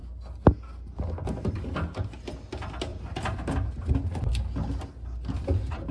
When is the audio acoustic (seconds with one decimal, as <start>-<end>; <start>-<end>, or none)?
0.0-5.9

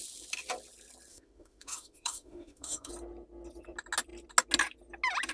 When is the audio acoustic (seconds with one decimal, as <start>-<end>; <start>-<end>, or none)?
0.0-1.1; 2.9-5.3

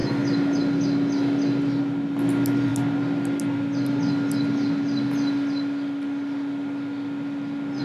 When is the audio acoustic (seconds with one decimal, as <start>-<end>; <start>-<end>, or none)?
0.0-7.8

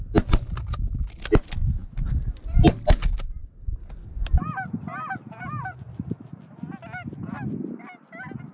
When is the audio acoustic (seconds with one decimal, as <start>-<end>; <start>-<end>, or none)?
0.0-8.5

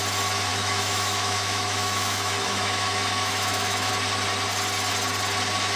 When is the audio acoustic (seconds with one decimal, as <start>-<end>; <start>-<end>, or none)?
0.0-0.5; 3.9-5.8

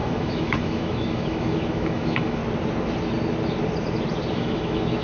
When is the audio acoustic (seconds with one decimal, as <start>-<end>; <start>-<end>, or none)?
2.4-4.3